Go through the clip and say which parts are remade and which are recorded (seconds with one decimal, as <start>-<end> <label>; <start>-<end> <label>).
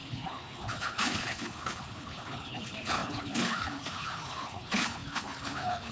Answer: 0.0-5.9 remade